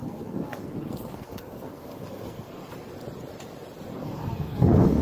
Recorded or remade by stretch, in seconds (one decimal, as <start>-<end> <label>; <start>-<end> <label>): 0.0-2.7 remade; 2.7-3.9 recorded; 3.9-5.0 remade